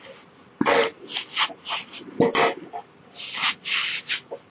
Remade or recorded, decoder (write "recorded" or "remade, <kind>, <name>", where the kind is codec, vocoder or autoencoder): recorded